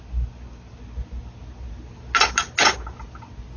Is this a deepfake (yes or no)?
no